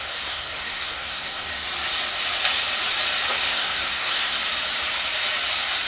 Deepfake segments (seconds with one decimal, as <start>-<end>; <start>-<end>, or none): 0.0-1.5; 3.4-4.4